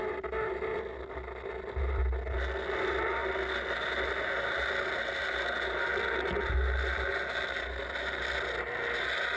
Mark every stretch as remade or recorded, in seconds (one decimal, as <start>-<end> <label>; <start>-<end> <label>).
0.0-9.4 recorded